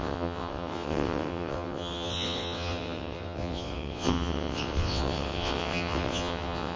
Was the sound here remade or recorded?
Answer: remade